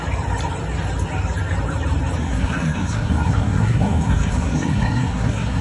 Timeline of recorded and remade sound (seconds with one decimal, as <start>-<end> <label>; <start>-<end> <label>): 0.0-2.2 recorded; 2.2-5.6 remade

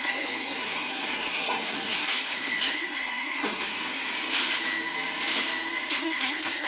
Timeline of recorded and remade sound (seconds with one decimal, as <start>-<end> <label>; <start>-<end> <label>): 0.0-4.1 remade; 4.1-5.9 recorded; 5.9-6.7 remade

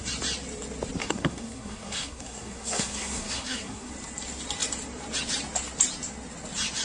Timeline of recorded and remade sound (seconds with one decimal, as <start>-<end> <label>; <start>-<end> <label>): 0.0-1.0 recorded; 1.0-3.9 remade; 3.9-6.8 recorded

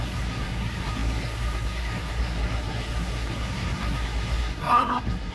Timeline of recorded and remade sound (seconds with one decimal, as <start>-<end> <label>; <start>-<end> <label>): 0.0-5.3 remade

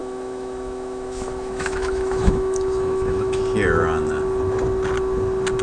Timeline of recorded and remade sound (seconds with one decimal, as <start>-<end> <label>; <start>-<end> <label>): 0.0-3.4 remade; 3.4-5.6 recorded

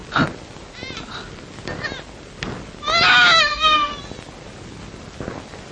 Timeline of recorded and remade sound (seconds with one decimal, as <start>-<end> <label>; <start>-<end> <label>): 0.0-3.4 recorded; 3.4-3.9 remade; 3.9-5.7 recorded

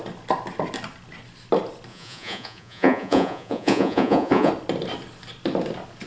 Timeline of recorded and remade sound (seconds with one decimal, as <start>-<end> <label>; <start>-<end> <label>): 0.0-1.9 recorded; 1.9-4.5 remade; 4.5-6.1 recorded

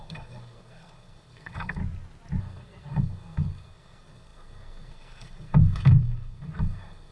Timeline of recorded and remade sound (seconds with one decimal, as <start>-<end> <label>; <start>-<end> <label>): 0.0-1.8 remade; 1.8-2.4 recorded; 2.4-7.1 remade